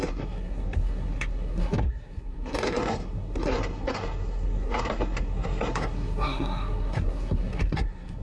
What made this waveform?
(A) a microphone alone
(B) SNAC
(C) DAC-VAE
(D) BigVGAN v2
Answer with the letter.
B